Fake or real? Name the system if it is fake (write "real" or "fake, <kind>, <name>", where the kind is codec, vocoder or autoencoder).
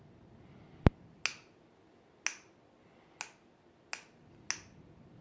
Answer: real